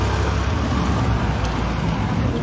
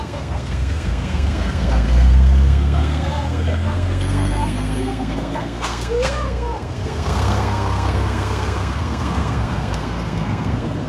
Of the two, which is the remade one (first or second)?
second